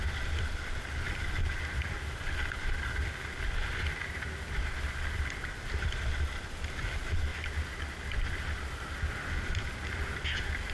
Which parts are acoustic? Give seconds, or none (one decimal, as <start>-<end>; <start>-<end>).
0.0-10.7